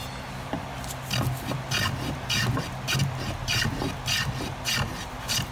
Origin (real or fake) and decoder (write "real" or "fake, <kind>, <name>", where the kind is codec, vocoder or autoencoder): real